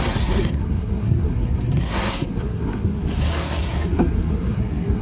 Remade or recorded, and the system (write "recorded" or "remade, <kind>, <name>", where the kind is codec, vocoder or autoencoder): remade, codec, SNAC